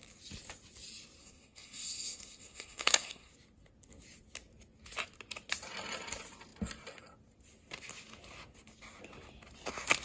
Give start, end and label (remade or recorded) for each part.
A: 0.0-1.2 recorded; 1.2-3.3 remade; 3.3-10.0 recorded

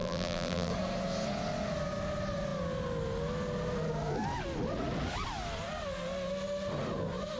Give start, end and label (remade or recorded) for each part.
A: 0.0-0.7 remade; 0.7-7.4 recorded